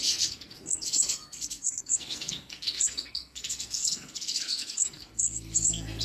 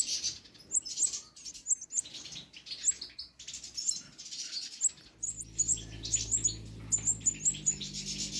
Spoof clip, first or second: first